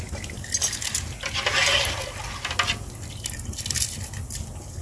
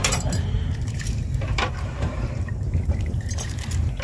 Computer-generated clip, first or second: second